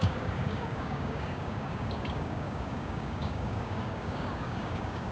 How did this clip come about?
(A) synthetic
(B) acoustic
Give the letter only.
A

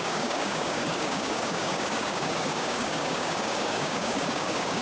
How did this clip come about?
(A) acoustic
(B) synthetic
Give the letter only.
B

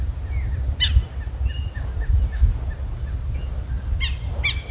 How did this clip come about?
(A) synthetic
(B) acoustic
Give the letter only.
B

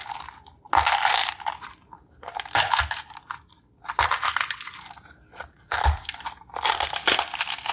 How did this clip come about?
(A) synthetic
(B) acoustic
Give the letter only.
B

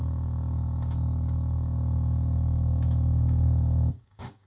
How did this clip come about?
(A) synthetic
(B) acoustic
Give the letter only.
A